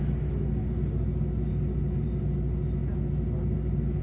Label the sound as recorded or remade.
recorded